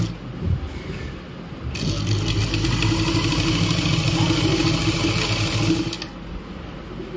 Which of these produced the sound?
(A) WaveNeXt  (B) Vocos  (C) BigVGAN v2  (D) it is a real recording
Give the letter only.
D